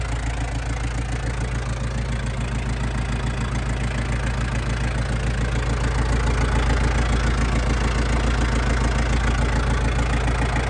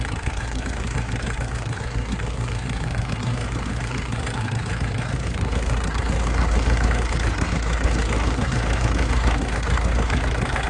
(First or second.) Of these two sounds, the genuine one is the first